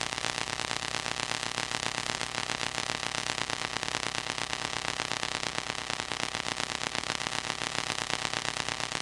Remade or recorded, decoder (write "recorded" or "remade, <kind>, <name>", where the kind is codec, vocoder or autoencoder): recorded